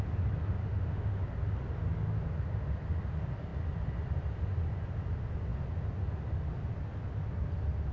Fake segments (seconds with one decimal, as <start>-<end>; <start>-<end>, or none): 0.6-1.2

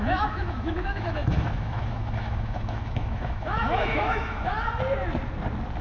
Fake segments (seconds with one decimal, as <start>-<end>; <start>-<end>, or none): 0.0-4.5

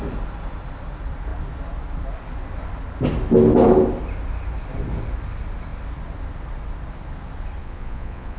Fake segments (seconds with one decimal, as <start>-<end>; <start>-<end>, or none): 7.6-8.4

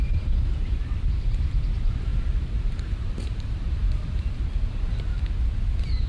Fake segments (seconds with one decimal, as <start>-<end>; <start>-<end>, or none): 0.0-5.1